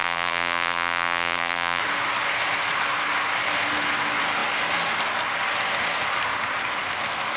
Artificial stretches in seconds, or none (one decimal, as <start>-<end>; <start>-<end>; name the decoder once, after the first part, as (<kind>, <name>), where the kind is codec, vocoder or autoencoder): 0.0-1.8 (vocoder, BigVGAN v2)